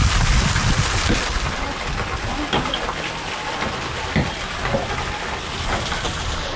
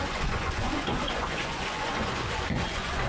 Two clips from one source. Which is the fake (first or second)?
second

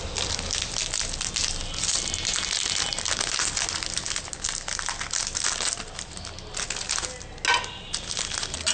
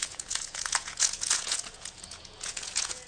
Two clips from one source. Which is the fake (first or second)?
second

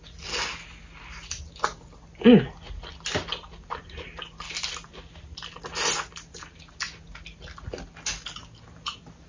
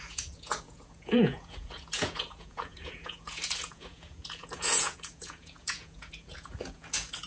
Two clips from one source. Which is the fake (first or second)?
second